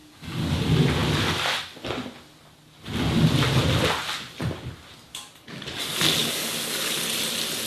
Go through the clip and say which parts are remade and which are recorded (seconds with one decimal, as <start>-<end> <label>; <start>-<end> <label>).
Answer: 0.0-0.6 remade; 0.6-5.1 recorded; 5.1-5.6 remade; 5.6-6.2 recorded; 6.2-7.0 remade; 7.0-7.7 recorded